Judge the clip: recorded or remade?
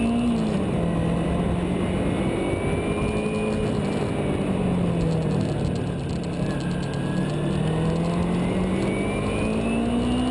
recorded